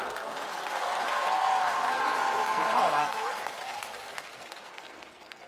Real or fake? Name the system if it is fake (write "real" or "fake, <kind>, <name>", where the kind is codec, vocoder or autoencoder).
fake, codec, SNAC